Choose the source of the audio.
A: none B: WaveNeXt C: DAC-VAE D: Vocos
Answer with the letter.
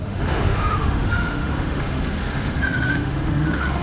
C